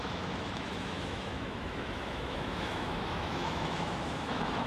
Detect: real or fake fake